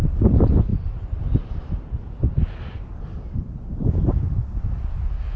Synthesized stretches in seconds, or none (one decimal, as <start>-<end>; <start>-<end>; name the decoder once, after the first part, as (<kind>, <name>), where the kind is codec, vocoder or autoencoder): none